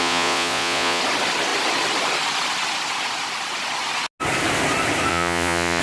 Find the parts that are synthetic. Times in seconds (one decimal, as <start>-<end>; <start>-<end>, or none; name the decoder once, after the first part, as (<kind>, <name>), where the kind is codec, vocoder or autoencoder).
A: 0.0-1.0 (vocoder, Vocos); 5.1-5.8